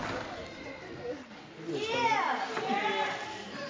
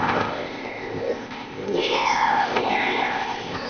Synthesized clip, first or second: second